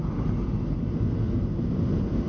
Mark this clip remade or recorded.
recorded